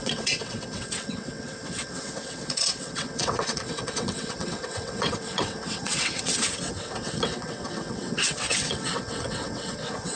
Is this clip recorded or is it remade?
remade